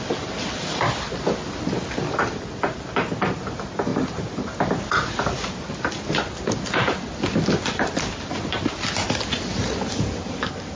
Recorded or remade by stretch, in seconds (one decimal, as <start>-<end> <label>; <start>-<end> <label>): 0.0-10.8 recorded